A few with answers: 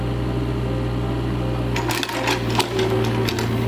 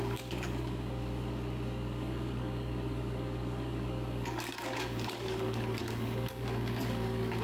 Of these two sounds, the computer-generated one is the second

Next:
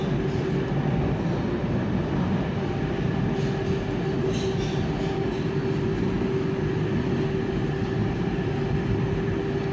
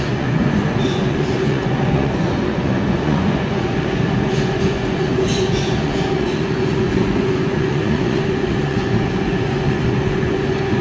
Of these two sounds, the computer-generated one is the second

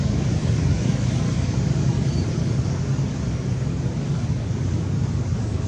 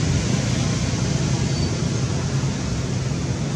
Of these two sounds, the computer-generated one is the first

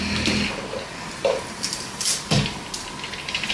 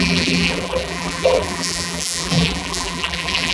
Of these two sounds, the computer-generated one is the second